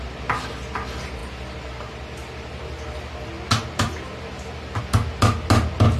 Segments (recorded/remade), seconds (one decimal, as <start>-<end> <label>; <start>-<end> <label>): 0.0-6.0 recorded